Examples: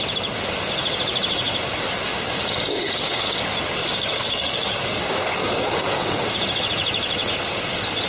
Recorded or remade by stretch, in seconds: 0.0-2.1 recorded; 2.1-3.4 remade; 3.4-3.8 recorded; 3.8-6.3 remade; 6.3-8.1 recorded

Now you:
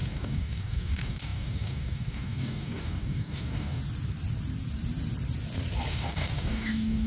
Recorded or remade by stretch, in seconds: 0.0-3.8 remade; 3.8-5.9 recorded; 5.9-7.1 remade

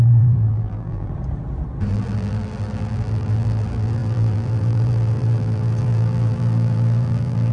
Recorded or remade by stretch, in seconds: 0.0-1.1 remade; 1.1-1.9 recorded; 1.9-7.5 remade